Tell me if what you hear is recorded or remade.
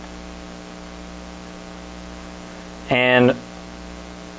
recorded